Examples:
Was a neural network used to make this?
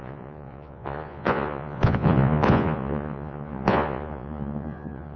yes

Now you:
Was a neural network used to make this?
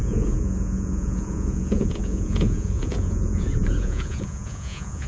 yes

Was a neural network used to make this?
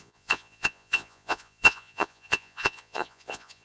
yes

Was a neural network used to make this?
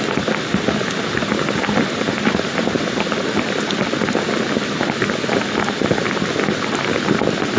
no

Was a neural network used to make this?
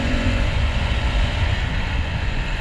yes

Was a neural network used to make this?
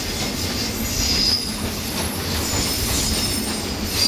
no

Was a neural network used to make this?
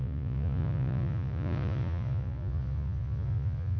yes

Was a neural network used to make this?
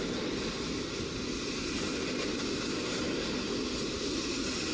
no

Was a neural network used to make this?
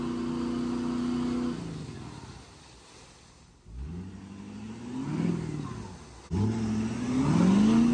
no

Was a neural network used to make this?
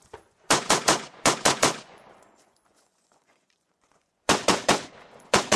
yes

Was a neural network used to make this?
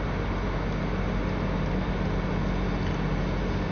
no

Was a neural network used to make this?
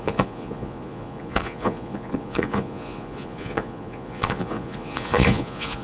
yes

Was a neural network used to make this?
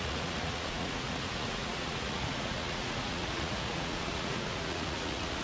yes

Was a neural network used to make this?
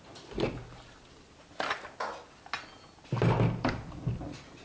no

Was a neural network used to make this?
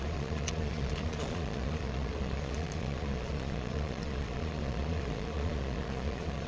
yes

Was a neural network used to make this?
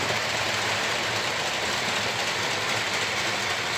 no